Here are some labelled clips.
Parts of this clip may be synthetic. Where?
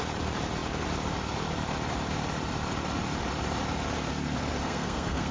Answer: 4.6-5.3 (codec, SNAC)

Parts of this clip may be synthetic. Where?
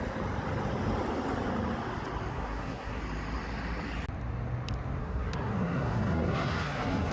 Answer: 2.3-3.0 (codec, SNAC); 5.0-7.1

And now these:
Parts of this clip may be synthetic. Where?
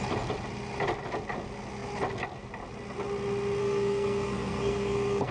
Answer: 3.6-5.3 (codec, SNAC)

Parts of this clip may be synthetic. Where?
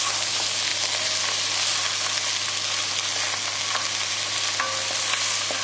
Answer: none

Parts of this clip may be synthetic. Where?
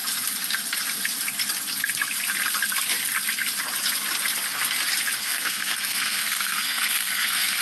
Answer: 5.2-7.6 (codec, SNAC)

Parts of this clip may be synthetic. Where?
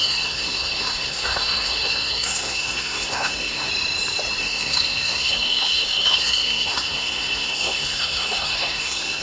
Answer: 0.0-3.7 (codec, SNAC); 4.4-9.2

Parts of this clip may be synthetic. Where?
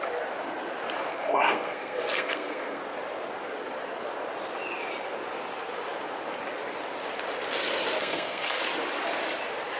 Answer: 1.1-2.8 (codec, SNAC); 8.0-8.6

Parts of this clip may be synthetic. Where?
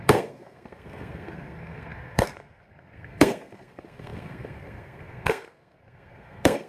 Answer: 0.0-6.7 (codec, SNAC)